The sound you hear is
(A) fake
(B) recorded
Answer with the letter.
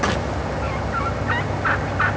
B